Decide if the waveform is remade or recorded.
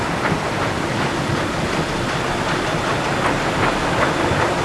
recorded